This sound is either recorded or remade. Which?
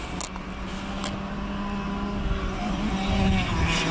recorded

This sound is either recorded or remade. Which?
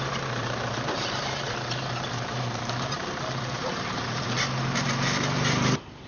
remade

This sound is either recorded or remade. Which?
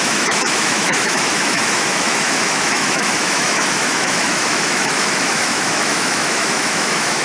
remade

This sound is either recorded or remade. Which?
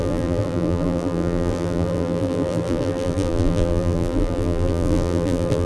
remade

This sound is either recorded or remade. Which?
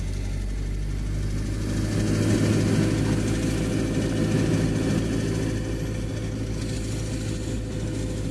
recorded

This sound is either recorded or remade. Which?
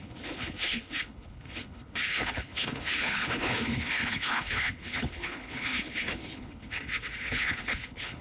remade